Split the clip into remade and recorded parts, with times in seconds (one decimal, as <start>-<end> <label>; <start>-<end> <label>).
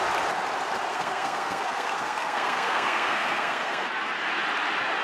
0.0-0.9 recorded; 0.9-3.9 remade; 3.9-5.0 recorded